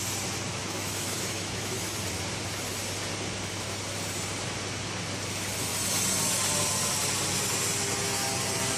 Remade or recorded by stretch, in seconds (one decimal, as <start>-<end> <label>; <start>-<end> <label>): 0.0-0.6 recorded; 0.6-1.9 remade; 1.9-8.8 recorded